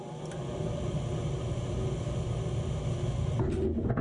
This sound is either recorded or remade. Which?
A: recorded